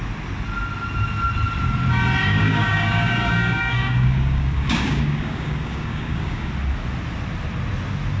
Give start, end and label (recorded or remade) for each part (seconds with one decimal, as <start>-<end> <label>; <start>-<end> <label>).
0.0-2.2 recorded; 2.2-6.5 remade; 6.5-8.2 recorded